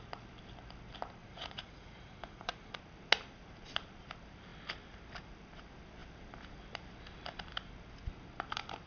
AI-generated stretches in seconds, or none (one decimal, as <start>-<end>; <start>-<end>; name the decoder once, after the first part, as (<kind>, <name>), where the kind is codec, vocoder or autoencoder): 1.2-2.7 (vocoder, Vocos)